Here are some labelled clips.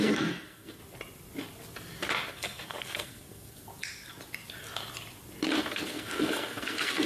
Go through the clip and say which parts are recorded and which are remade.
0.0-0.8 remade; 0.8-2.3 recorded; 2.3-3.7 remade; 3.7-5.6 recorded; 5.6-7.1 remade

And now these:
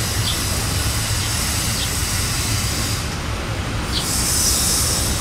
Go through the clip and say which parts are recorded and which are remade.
0.0-5.2 recorded

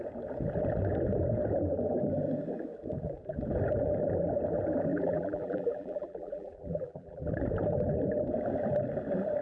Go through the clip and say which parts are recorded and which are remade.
0.0-4.9 recorded; 4.9-7.3 remade; 7.3-9.4 recorded